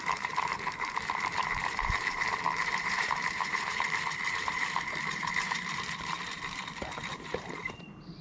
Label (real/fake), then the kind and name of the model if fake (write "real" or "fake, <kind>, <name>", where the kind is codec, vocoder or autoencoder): fake, vocoder, BigVGAN v2